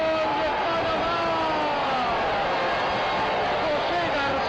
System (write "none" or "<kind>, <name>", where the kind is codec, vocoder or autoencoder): none